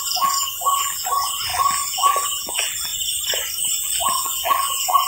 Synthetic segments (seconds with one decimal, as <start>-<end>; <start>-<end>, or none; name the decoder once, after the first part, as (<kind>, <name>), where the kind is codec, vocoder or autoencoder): 0.0-2.9 (vocoder, BigVGAN v2); 3.7-5.1